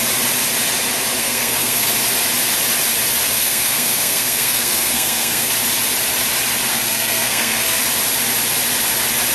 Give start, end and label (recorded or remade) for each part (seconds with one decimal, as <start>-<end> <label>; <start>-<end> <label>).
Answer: 0.0-1.2 recorded; 1.2-1.9 remade; 1.9-3.2 recorded; 3.2-5.5 remade; 5.5-6.7 recorded; 6.7-7.8 remade; 7.8-9.3 recorded